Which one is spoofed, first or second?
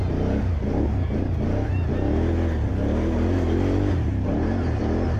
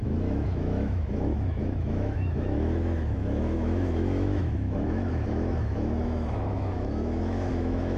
second